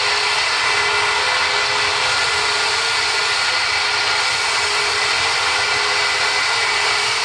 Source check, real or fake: real